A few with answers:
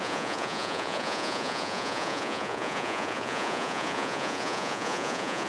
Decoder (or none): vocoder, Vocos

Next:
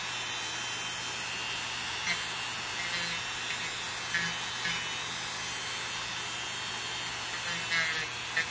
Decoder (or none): none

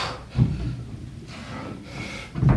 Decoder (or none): none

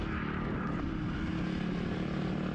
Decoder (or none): none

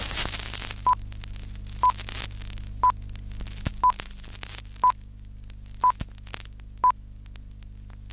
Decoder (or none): none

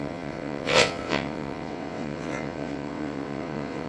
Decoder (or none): vocoder, WaveNeXt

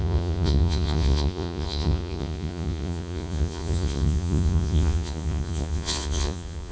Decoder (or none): vocoder, Vocos